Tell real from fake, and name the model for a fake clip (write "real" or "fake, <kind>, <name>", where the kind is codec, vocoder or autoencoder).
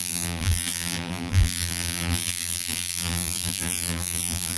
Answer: fake, vocoder, BigVGAN v2